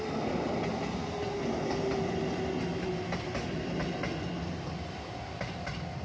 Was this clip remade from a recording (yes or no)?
no